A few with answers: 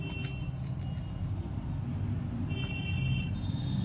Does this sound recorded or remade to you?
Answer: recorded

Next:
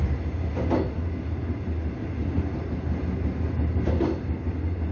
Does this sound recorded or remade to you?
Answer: recorded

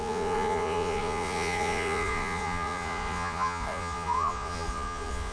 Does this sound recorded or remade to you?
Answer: remade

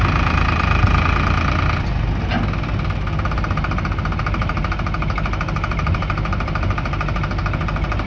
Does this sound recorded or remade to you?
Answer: recorded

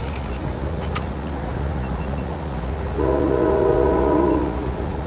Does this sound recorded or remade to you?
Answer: remade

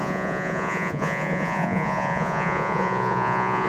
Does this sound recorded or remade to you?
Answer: remade